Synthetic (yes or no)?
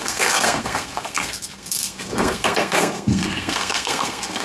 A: yes